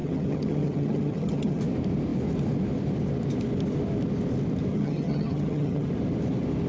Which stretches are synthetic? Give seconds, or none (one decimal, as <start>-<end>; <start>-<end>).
0.0-1.6; 4.7-5.9